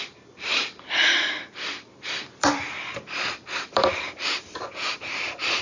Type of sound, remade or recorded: remade